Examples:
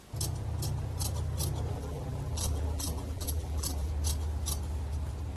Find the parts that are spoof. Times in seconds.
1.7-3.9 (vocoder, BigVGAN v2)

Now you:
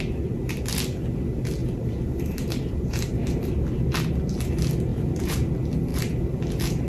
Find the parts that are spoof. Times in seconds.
1.6-3.8 (vocoder, BigVGAN v2); 4.9-5.5

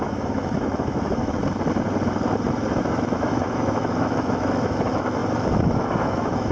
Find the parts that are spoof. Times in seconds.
0.0-1.4 (autoencoder, DAC-VAE); 2.7-6.5

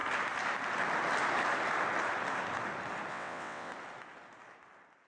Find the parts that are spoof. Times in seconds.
3.1-3.7 (vocoder, WaveNeXt)

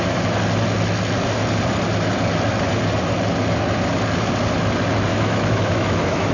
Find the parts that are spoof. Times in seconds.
5.1-6.3 (autoencoder, DAC-VAE)